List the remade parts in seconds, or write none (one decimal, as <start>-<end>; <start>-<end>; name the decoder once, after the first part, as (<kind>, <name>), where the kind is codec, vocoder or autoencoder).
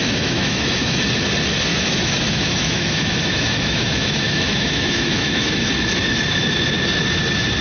0.0-1.0 (autoencoder, DAC-VAE); 1.7-5.7